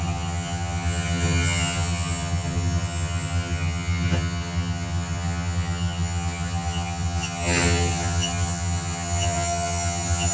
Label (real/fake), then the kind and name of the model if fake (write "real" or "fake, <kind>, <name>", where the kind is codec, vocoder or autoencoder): fake, vocoder, HiFi-GAN